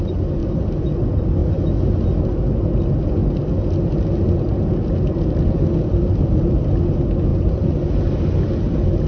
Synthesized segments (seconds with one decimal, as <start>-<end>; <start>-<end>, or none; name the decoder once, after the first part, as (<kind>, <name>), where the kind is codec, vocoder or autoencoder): none